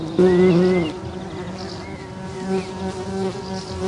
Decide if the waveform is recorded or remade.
recorded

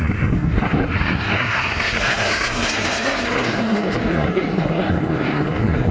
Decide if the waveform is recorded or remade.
remade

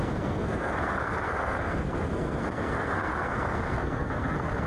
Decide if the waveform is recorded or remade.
remade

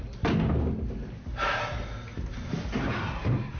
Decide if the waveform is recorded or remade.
recorded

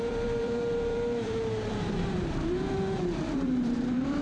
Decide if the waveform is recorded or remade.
remade